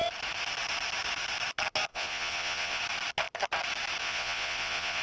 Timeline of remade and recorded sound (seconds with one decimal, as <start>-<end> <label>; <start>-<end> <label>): 0.0-1.9 recorded; 1.9-2.8 remade; 2.8-4.0 recorded; 4.0-5.0 remade